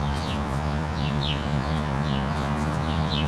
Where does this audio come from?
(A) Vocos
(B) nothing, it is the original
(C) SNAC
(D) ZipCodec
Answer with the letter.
A